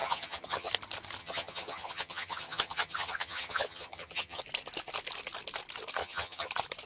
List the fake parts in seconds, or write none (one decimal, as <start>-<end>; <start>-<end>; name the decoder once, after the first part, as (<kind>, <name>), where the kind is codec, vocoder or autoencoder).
0.0-0.7 (vocoder, HiFi-GAN); 1.2-4.4; 6.0-6.5